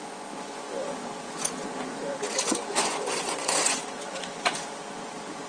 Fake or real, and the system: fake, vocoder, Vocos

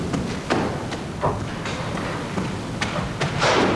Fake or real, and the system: real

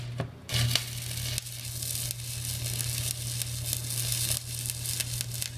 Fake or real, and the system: real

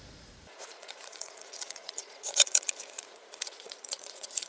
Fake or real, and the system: fake, vocoder, Vocos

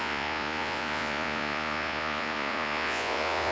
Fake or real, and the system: fake, vocoder, Vocos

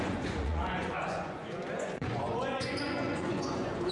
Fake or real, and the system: fake, vocoder, Vocos